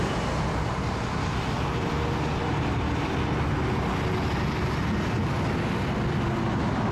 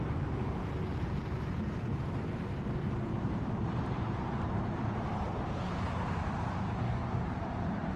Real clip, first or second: first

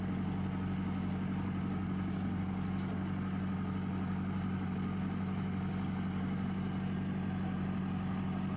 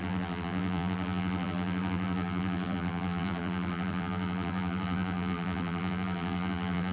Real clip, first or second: first